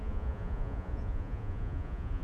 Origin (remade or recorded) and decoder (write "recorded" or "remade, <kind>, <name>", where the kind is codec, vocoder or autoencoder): remade, vocoder, Vocos